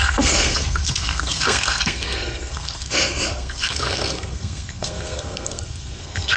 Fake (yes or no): yes